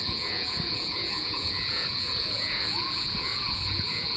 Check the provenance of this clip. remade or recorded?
remade